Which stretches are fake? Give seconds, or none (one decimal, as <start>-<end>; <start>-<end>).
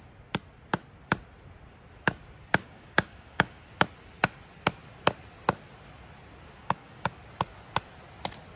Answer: 2.6-3.6; 6.6-7.2